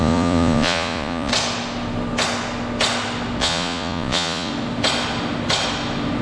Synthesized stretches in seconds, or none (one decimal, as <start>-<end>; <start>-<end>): 0.0-1.3; 3.4-4.5

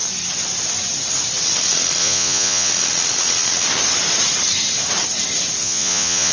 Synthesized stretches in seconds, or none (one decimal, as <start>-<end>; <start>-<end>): 2.0-2.7; 5.6-6.3